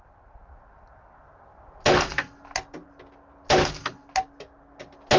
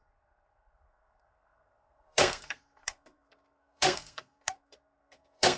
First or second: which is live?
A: first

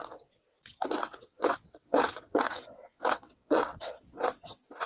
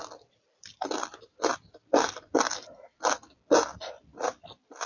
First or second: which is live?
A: second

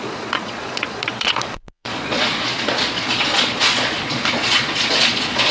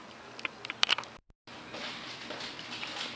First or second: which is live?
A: second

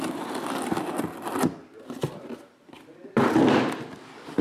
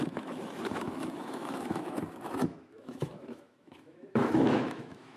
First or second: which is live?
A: first